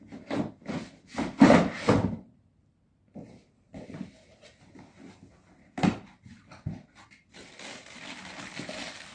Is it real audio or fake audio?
real